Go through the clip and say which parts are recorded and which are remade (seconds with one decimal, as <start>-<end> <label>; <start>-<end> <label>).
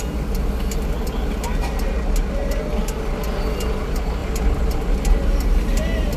0.0-4.2 recorded; 4.2-4.9 remade; 4.9-6.2 recorded